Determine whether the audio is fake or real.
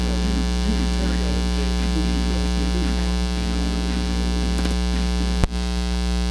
real